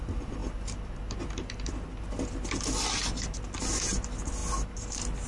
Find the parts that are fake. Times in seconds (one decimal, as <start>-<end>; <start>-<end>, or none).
none

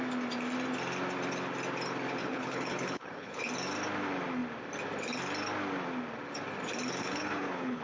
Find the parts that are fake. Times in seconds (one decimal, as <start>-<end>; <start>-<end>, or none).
2.2-3.4; 7.0-7.8

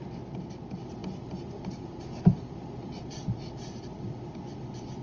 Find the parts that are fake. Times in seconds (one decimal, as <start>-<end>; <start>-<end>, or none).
none

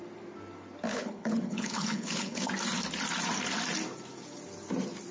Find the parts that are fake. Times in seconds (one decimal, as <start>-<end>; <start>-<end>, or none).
0.9-2.5

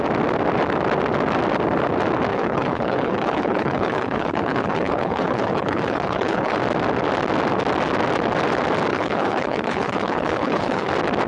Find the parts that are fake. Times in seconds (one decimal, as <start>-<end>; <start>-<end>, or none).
2.3-6.6; 8.9-10.9

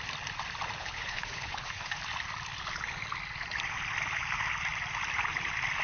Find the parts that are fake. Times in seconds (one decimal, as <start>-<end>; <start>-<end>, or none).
0.8-2.0

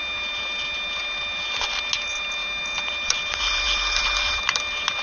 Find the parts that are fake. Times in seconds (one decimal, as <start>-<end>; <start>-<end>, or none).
none